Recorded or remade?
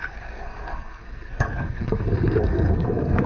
remade